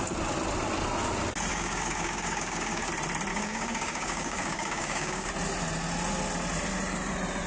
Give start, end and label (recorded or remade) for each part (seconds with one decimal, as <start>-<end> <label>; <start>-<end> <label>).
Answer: 0.0-1.5 recorded; 1.5-2.9 remade; 2.9-3.3 recorded; 3.3-5.3 remade; 5.3-7.5 recorded